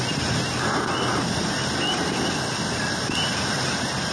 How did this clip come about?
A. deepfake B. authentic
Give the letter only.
B